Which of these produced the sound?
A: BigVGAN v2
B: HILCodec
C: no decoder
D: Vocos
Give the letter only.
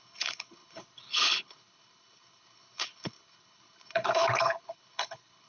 B